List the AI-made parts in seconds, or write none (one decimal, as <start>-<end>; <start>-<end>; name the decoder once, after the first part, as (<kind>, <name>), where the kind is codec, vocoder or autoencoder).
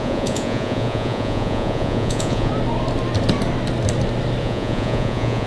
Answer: 0.0-2.5 (vocoder, Vocos); 4.4-5.5